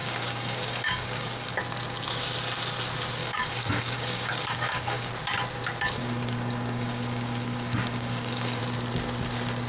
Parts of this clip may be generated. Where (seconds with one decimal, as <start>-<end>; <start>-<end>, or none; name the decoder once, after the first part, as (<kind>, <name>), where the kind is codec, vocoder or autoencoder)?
0.0-1.6 (codec, DAC); 3.2-5.1; 6.0-8.6